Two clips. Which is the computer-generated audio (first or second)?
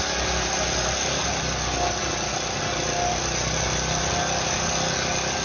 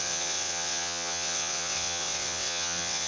second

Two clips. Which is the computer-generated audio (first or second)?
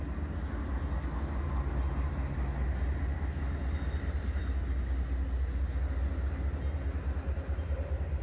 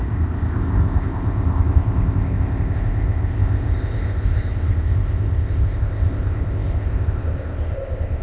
second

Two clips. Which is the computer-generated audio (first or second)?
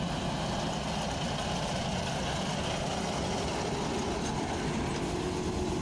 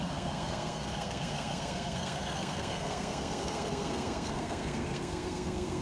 second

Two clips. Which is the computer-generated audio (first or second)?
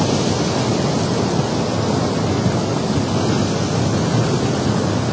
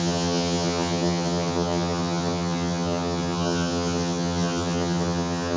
second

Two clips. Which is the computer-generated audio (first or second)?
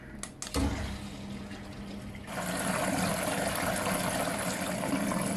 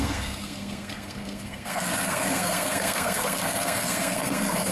second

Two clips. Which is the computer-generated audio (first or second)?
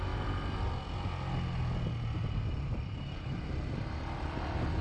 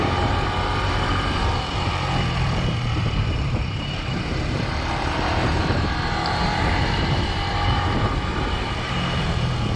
second